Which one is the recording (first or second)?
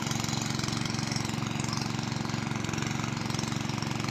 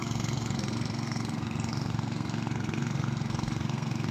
first